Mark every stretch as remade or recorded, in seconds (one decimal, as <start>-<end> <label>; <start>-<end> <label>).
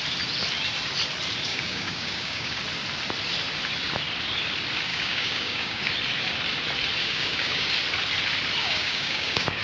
0.0-1.5 recorded; 1.5-2.6 remade; 2.6-4.9 recorded; 4.9-5.9 remade; 5.9-7.0 recorded; 7.0-7.7 remade; 7.7-8.6 recorded; 8.6-9.6 remade